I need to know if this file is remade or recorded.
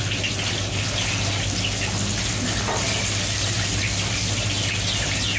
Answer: recorded